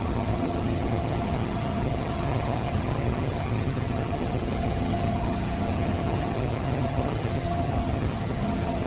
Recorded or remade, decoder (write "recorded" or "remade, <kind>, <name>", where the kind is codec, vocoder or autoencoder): remade, vocoder, HiFi-GAN